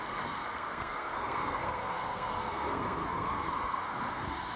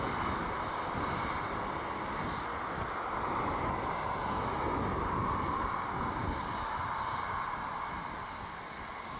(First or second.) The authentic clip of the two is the second